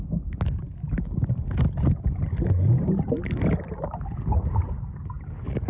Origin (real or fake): real